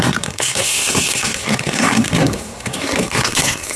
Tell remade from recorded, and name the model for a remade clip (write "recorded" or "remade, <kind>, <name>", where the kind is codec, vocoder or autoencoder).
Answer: remade, codec, SNAC